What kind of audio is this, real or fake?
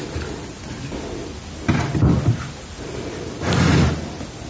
real